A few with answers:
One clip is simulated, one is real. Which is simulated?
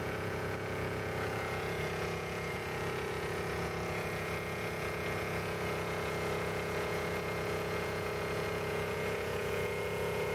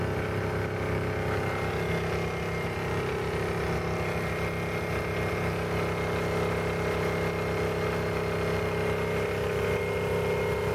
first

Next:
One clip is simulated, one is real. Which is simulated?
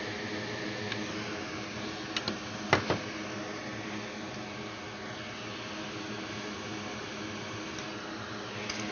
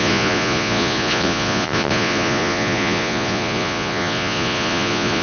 second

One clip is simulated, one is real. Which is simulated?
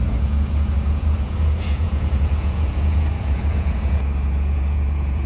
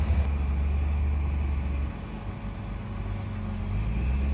first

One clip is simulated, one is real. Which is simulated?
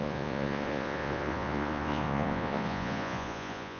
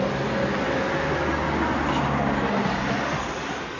first